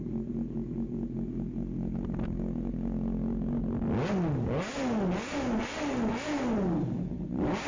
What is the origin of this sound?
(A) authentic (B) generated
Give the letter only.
A